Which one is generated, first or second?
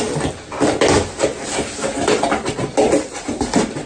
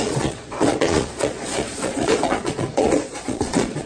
second